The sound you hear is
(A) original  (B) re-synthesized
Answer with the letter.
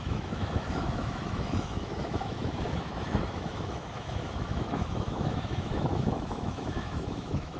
B